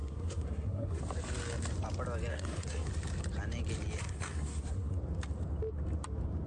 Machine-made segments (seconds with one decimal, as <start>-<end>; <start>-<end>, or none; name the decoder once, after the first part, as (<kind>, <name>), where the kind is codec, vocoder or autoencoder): 0.0-1.0 (codec, SNAC); 2.3-2.9; 4.0-5.0